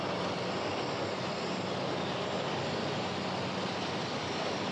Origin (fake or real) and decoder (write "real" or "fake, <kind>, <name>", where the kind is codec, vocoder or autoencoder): real